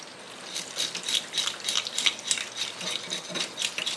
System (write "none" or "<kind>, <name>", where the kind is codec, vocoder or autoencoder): none